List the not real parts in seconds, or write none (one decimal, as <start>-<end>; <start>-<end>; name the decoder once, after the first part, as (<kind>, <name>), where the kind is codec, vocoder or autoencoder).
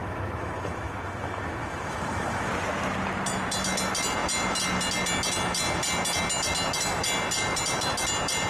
0.0-2.5 (autoencoder, DAC-VAE)